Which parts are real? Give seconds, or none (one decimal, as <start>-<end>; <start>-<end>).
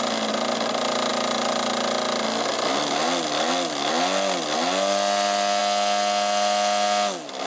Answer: 0.0-7.5